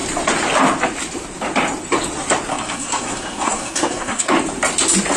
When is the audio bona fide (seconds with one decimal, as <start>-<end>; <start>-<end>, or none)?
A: 0.0-2.5; 4.3-5.2